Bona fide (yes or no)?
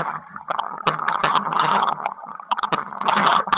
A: no